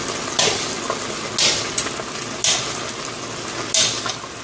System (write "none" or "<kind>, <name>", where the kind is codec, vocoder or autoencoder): none